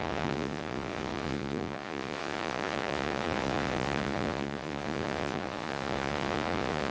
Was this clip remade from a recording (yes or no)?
yes